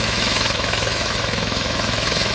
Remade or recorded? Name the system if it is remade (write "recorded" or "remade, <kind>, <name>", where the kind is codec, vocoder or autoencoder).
remade, autoencoder, DAC-VAE